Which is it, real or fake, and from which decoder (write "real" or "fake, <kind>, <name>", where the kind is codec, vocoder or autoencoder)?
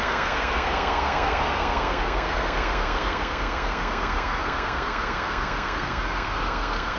fake, codec, SNAC